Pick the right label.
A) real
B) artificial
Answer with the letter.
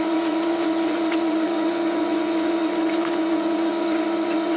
B